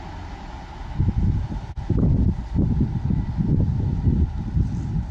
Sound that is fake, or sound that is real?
real